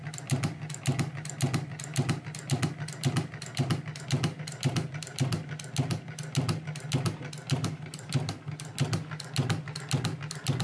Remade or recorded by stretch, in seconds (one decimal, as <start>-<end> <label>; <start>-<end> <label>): 0.0-10.6 recorded